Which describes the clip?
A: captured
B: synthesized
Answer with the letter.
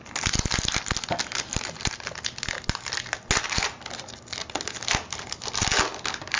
A